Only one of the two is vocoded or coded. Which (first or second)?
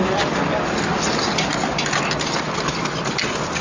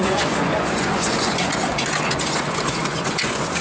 second